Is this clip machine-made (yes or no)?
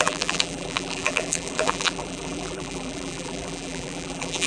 yes